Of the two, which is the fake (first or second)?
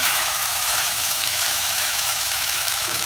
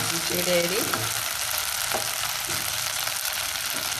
first